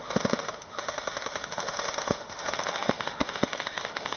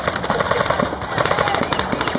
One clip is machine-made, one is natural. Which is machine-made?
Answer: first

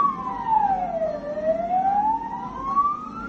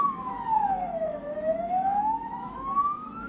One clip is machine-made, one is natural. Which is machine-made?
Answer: second